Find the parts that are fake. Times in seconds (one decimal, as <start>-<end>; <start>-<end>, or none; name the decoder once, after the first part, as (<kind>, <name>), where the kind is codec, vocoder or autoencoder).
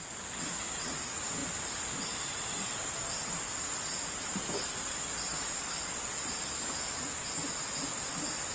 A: 1.4-6.5 (vocoder, BigVGAN v2)